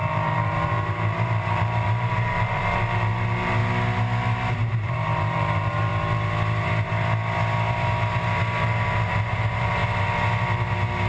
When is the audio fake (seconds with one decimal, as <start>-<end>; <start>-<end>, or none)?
0.0-3.6; 4.5-5.9; 9.1-9.8